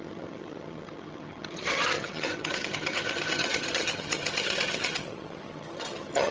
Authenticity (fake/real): fake